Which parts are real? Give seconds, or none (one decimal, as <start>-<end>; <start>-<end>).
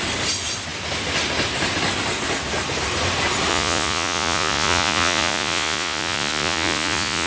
0.0-3.5